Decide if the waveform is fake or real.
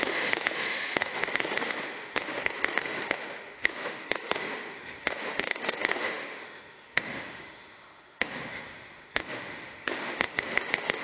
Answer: fake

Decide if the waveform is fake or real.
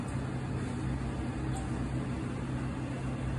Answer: real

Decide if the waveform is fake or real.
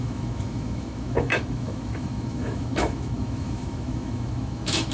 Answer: fake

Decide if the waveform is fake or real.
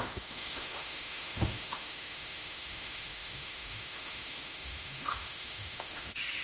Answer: fake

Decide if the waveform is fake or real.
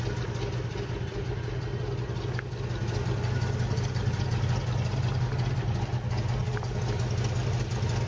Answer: real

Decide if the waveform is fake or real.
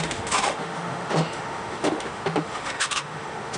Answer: fake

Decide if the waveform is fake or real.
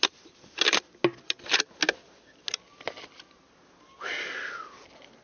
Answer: real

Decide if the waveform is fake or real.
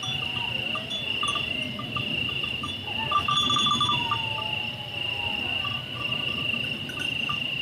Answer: real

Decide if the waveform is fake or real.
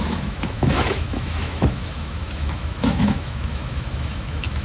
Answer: fake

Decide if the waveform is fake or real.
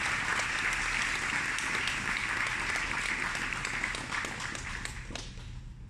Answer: real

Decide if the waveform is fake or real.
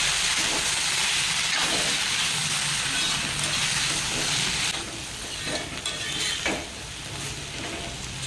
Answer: real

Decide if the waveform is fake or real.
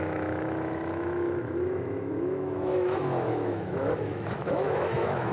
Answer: fake